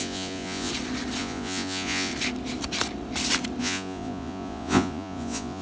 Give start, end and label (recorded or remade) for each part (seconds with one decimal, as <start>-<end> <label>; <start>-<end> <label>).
0.0-0.7 remade; 0.7-1.2 recorded; 1.2-2.1 remade; 2.1-3.6 recorded; 3.6-5.6 remade